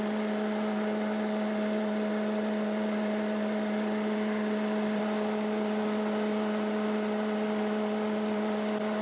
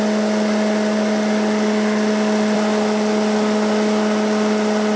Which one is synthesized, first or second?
first